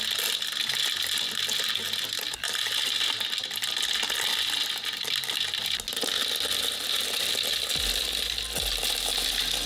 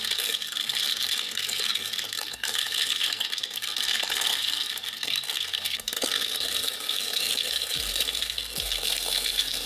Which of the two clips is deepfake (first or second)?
second